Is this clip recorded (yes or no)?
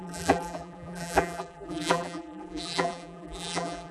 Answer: no